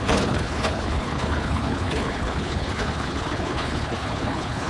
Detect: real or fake fake